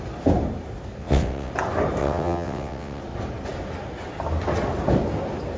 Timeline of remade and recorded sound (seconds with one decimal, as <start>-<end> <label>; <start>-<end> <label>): 0.0-1.0 recorded; 1.0-1.5 remade; 1.5-2.0 recorded; 2.0-3.0 remade; 3.0-5.6 recorded